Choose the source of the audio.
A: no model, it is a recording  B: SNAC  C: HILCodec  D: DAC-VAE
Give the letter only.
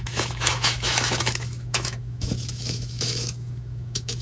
D